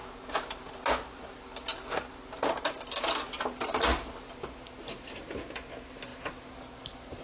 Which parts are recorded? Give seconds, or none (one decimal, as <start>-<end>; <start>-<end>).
0.0-7.2